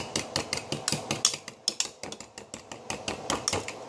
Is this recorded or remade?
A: recorded